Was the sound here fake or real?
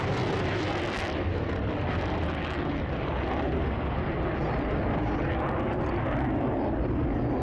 real